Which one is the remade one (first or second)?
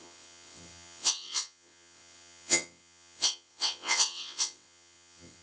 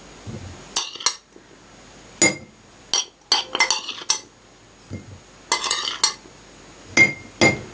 first